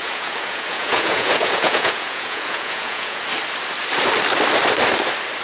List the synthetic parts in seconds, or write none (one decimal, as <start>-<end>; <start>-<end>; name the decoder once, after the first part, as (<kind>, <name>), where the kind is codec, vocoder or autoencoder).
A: 0.0-3.2 (vocoder, Vocos)